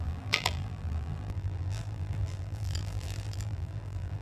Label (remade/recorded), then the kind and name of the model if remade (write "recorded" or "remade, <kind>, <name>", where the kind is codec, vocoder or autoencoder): remade, vocoder, BigVGAN v2